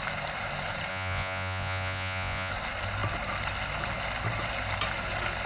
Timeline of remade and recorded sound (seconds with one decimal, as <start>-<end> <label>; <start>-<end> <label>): 0.0-0.9 recorded; 0.9-2.5 remade; 2.5-5.5 recorded